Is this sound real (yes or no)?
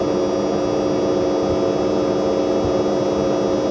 yes